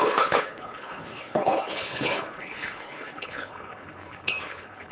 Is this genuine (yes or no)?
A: no